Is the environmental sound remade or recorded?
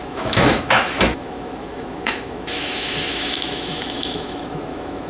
remade